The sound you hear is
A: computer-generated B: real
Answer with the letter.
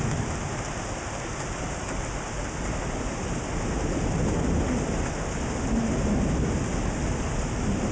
B